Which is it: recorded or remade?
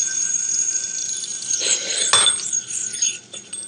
recorded